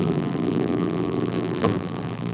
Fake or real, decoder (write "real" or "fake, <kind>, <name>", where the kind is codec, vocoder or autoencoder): fake, vocoder, BigVGAN v2